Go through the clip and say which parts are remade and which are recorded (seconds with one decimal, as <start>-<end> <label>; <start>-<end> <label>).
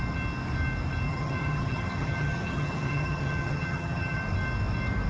0.0-1.1 recorded; 1.1-4.2 remade; 4.2-5.1 recorded